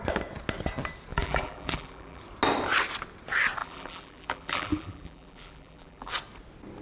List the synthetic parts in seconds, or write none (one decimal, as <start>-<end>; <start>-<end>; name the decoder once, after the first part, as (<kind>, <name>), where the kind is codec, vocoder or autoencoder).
1.1-2.2 (vocoder, BigVGAN v2); 3.6-6.1